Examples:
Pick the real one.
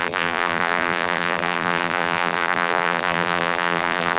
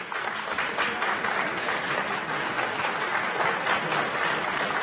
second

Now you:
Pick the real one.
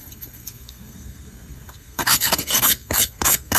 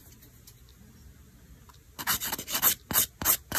second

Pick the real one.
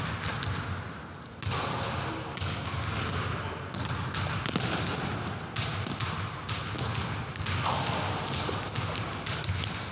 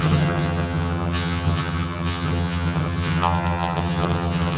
first